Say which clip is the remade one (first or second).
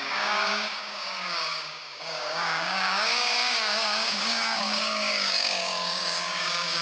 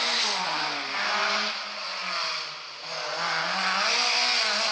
first